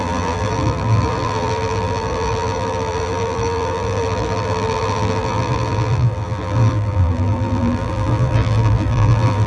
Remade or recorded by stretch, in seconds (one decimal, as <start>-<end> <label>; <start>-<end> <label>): 0.0-9.5 remade

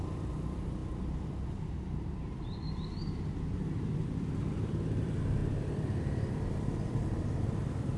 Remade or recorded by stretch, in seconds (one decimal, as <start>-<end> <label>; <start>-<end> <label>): 0.0-0.8 remade; 0.8-1.7 recorded; 1.7-8.0 remade

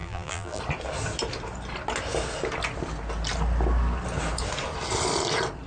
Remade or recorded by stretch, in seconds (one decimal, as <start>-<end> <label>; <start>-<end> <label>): 0.0-0.6 remade; 0.6-5.7 recorded